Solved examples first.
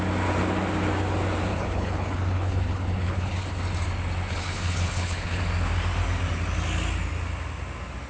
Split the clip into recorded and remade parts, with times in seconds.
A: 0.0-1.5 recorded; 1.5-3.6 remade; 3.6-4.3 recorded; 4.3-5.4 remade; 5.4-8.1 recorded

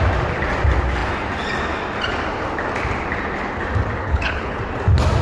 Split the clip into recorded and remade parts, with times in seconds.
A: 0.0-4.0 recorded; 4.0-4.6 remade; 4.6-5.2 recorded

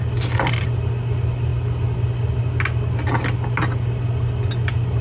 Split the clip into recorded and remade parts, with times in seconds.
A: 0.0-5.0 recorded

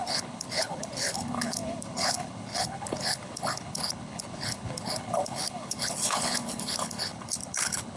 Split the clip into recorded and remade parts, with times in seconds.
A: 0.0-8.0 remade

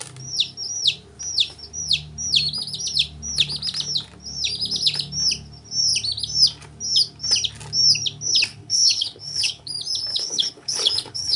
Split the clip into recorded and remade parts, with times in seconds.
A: 0.0-8.5 recorded; 8.5-9.7 remade; 9.7-10.1 recorded; 10.1-11.4 remade